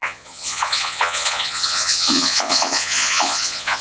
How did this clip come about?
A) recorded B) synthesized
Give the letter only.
B